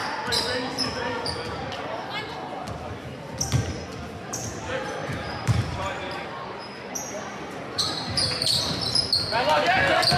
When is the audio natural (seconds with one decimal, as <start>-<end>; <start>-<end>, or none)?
0.0-5.0; 8.6-10.2